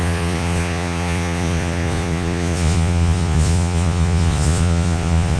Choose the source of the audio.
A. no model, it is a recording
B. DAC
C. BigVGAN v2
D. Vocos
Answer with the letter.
D